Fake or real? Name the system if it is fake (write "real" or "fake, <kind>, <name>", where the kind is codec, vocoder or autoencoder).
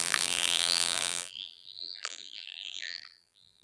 fake, vocoder, BigVGAN v2